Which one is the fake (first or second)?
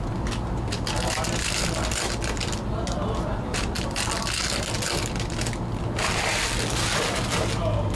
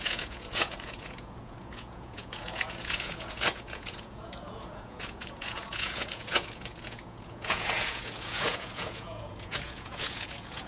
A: second